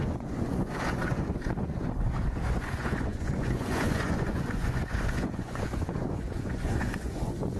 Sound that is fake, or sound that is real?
fake